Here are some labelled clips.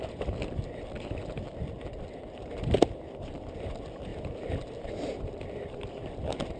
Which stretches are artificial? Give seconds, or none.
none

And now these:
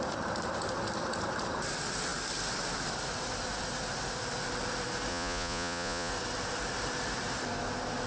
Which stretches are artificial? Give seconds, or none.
5.1-6.1 (vocoder, Vocos)